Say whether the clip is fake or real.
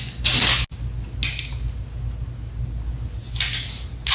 real